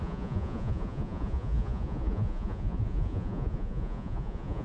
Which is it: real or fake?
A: fake